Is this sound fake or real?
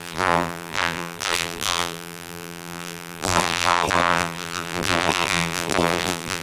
fake